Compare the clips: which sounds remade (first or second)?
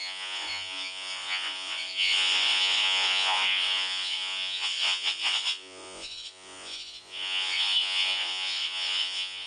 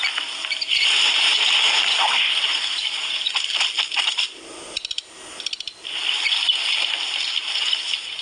first